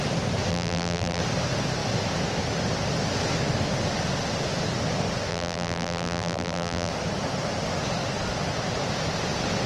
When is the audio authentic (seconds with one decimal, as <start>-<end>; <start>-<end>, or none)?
0.0-0.5; 1.2-5.3; 6.9-9.7